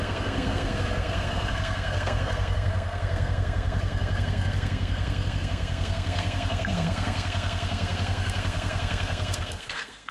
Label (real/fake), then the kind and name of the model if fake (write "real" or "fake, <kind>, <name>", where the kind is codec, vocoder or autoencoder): fake, codec, SNAC